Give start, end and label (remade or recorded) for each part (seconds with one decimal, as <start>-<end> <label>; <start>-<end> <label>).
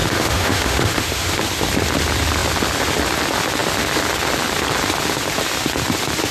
0.0-1.4 remade; 1.4-6.3 recorded